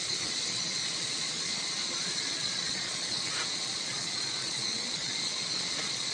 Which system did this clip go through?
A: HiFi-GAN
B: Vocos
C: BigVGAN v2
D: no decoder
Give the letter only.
B